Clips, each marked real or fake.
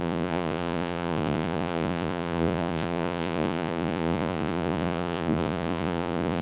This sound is fake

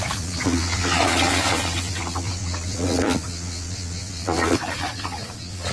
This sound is fake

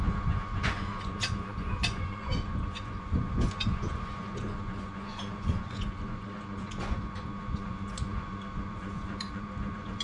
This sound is fake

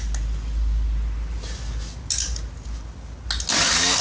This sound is real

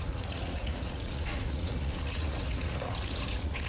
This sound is fake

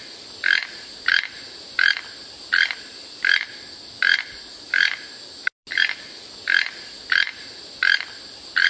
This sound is real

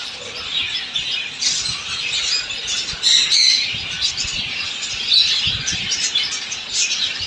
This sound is real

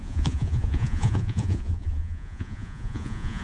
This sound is fake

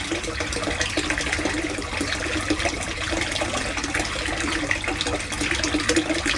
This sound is real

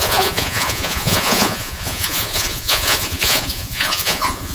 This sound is fake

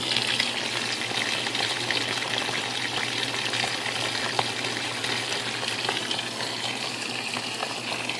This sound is real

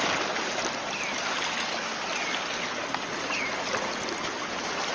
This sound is real